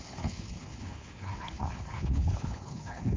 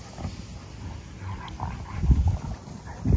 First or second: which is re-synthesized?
first